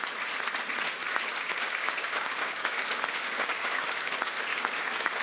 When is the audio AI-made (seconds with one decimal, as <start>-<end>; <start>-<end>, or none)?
1.0-4.1; 4.5-5.2